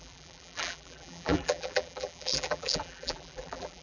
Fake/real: fake